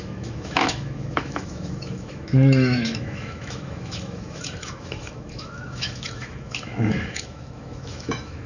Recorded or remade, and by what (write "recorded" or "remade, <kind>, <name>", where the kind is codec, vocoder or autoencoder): remade, autoencoder, DAC-VAE